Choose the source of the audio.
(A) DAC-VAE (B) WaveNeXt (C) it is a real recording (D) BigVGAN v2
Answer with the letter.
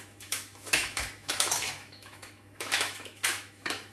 A